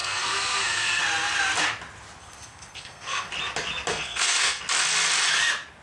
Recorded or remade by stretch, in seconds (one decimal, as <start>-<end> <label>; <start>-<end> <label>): 0.0-1.0 remade; 1.0-2.2 recorded; 2.2-3.3 remade; 3.3-3.9 recorded; 3.9-4.6 remade; 4.6-5.8 recorded